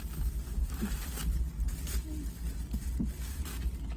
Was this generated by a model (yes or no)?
no